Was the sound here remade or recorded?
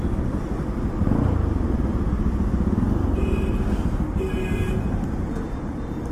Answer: recorded